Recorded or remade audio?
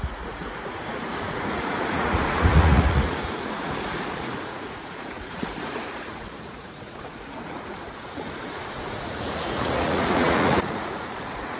remade